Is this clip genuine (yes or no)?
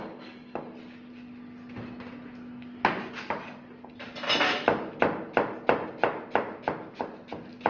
yes